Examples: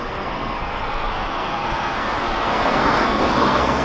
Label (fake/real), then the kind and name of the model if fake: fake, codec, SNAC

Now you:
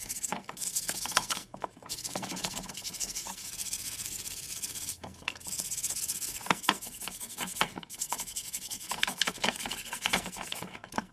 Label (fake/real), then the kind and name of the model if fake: fake, codec, SNAC